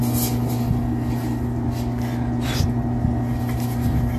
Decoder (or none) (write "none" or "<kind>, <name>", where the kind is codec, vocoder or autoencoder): none